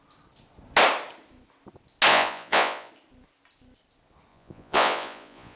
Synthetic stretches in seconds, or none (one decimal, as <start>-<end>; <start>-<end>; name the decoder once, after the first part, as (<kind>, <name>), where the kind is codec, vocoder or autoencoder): 2.1-2.9 (vocoder, Vocos); 4.3-5.6